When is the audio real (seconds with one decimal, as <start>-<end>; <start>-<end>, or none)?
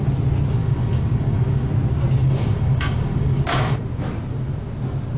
0.0-0.6; 1.7-2.2; 3.8-5.2